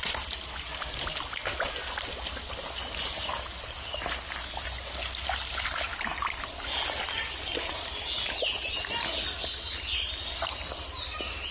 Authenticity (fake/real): real